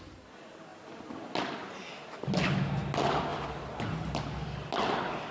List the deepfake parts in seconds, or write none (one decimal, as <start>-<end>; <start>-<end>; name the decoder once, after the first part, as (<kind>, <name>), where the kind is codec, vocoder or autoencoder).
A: none